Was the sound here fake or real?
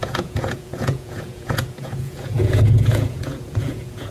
fake